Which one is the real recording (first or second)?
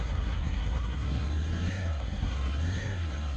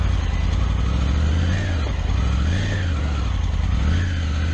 second